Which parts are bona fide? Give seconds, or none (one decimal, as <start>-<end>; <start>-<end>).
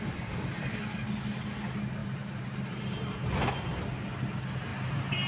0.0-2.0; 2.8-4.7